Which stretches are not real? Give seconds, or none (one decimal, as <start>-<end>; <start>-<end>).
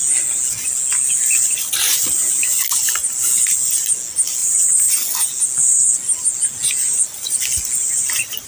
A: 4.4-4.9